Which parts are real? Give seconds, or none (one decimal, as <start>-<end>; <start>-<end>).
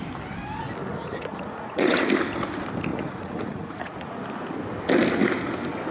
0.0-0.9; 2.0-2.9; 4.1-5.9